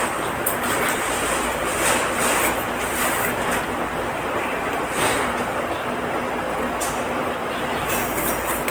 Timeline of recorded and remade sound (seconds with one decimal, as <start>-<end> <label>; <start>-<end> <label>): 0.0-8.7 recorded